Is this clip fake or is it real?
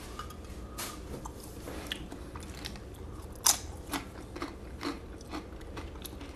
real